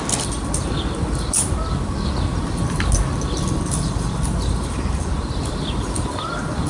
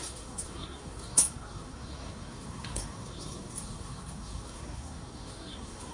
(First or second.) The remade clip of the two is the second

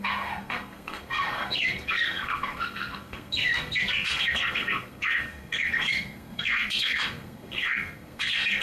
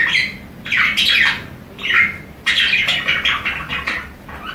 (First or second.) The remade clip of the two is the first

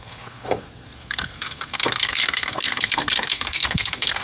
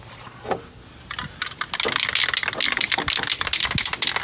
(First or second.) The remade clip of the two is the first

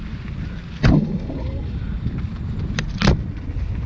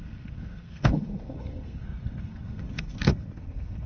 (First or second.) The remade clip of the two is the second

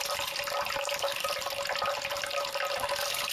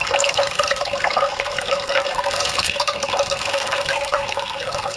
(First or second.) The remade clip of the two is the second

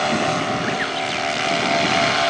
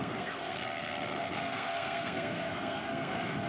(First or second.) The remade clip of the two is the second